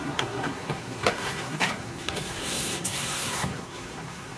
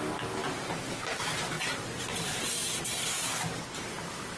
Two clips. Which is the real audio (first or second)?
second